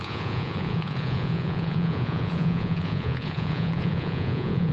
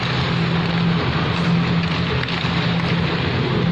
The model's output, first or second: first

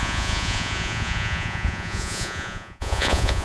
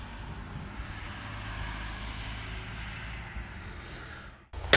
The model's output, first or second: first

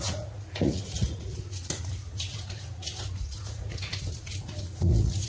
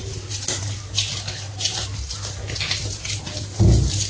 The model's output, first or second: first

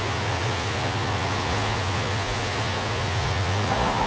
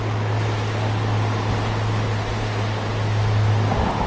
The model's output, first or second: first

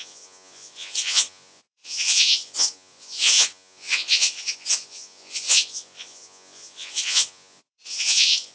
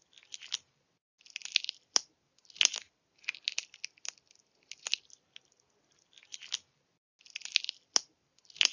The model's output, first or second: first